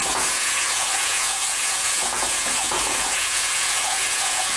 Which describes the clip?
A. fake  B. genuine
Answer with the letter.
A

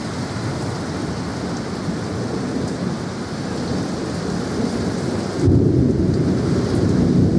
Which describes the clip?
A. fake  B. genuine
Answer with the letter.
B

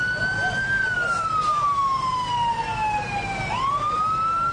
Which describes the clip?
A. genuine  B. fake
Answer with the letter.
A